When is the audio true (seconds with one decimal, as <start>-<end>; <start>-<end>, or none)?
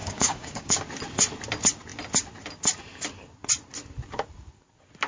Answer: 0.8-5.1